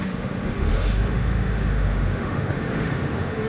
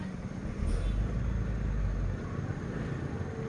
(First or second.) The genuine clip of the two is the second